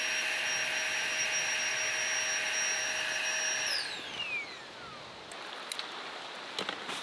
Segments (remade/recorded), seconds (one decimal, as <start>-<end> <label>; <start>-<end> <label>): 0.0-7.0 recorded

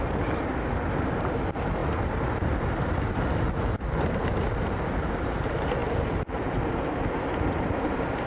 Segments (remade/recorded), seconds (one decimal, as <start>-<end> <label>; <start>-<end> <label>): 0.0-8.3 recorded

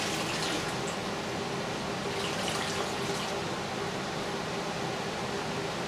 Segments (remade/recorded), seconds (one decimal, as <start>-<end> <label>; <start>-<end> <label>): 0.0-5.9 recorded

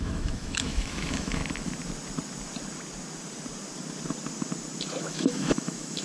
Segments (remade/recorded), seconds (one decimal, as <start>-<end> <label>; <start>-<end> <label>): 0.0-1.4 remade; 1.4-5.0 recorded; 5.0-6.0 remade

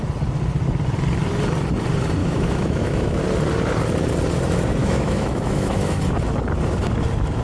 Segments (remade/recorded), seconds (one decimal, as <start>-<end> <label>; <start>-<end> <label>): 0.0-2.2 recorded; 2.2-3.2 remade; 3.2-4.8 recorded; 4.8-6.0 remade; 6.0-7.4 recorded